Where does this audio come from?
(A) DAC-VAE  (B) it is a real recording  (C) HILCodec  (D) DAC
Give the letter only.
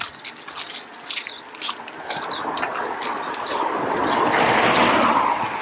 B